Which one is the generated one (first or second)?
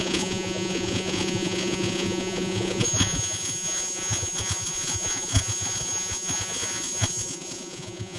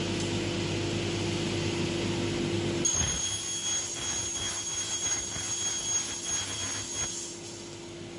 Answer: first